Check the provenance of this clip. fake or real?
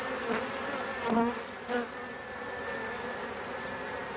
real